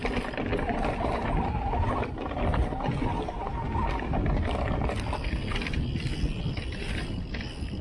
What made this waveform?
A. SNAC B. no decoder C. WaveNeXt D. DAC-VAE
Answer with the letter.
B